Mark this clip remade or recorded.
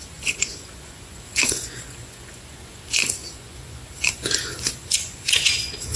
remade